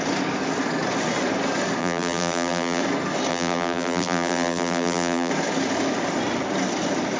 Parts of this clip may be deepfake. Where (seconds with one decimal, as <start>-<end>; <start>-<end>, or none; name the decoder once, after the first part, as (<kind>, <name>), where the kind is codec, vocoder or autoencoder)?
1.8-2.8 (vocoder, BigVGAN v2); 3.3-5.3